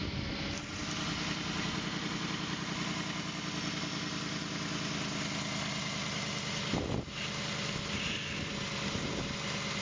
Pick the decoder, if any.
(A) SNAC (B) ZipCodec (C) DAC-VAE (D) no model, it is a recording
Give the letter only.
D